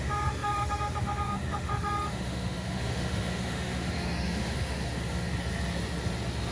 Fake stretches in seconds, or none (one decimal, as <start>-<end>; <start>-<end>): 0.0-5.3